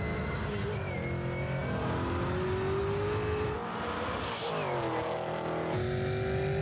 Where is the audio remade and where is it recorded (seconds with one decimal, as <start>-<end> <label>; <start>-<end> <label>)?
0.0-6.6 recorded